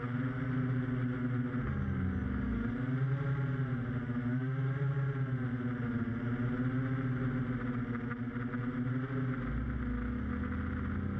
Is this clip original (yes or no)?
yes